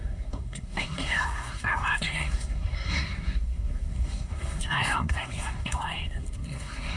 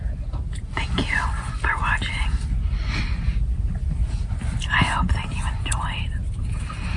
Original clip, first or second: second